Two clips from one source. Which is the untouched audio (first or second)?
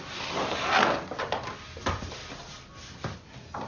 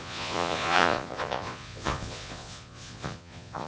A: first